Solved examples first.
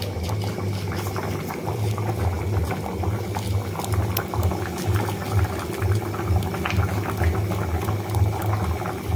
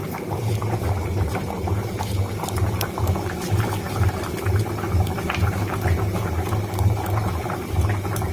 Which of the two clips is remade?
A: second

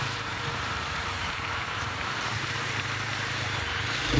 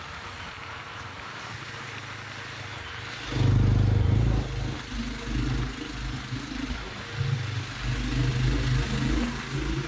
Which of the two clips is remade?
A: first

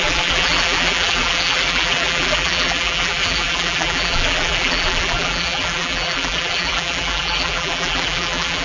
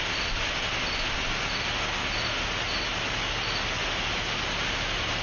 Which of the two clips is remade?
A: first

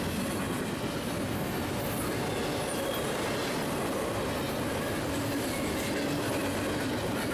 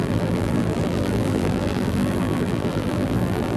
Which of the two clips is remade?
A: second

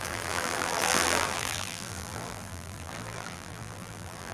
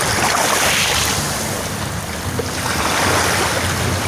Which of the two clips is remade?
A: first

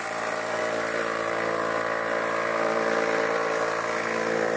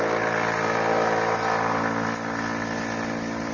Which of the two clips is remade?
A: first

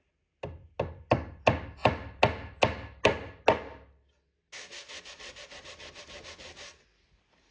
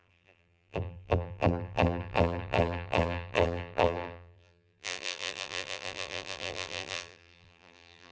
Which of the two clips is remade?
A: second